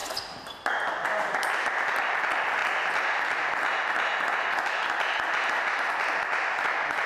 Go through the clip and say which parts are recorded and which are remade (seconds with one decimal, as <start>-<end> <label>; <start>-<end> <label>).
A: 0.0-7.1 recorded